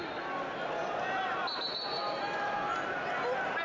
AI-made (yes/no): no